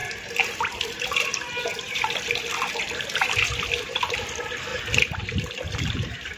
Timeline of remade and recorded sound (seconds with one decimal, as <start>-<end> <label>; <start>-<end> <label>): 0.0-3.1 recorded; 3.1-4.7 remade; 4.7-5.9 recorded; 5.9-6.4 remade